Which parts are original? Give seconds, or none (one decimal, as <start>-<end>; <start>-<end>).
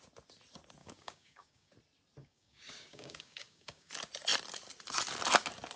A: 0.0-0.8; 1.7-2.2; 3.9-5.8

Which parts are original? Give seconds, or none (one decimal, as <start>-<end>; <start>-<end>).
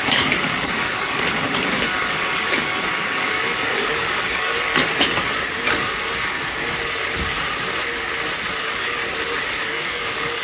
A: 4.5-8.5; 9.0-9.5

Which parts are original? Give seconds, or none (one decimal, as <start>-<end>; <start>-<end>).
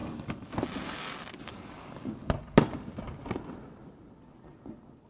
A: 0.5-1.4; 2.3-5.1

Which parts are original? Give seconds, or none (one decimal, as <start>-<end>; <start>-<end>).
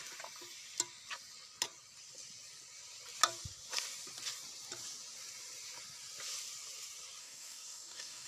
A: 0.0-7.2